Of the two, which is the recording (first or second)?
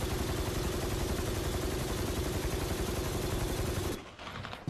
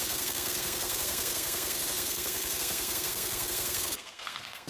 first